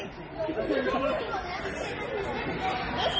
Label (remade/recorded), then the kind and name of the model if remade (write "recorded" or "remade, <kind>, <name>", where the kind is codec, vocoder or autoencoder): recorded